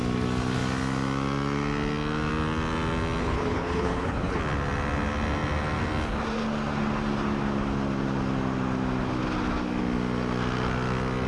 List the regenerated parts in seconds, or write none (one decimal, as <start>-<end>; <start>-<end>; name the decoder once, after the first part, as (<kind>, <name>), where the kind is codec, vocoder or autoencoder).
3.2-4.4 (codec, HILCodec)